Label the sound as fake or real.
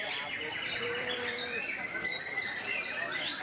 fake